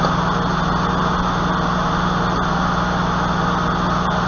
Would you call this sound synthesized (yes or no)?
no